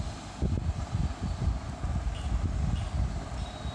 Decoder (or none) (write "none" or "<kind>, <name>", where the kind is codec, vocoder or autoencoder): none